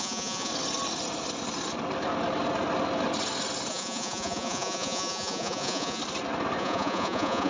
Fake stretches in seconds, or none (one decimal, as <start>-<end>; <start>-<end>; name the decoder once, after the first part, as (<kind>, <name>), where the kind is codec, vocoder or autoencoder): 0.0-0.5 (vocoder, Vocos); 3.7-6.0; 6.6-7.5